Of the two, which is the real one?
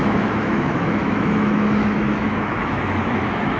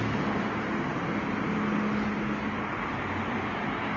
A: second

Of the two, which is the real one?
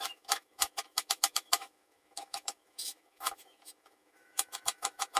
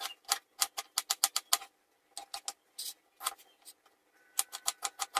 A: second